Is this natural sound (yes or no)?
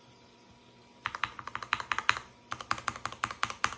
yes